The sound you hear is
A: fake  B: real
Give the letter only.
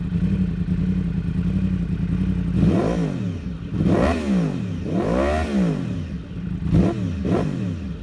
B